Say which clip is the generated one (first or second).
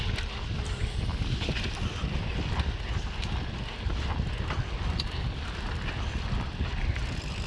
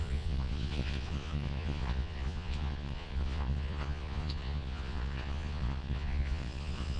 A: second